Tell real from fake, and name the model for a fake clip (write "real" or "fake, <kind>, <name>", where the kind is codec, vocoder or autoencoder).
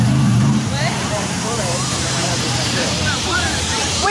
fake, vocoder, BigVGAN v2